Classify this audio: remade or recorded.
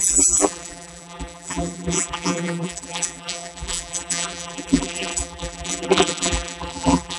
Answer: remade